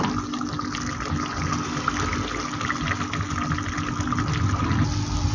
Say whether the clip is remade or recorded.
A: recorded